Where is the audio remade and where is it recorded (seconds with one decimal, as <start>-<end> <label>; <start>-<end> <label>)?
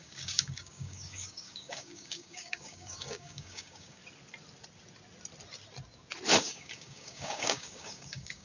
0.0-4.0 remade; 4.0-6.4 recorded; 6.4-8.4 remade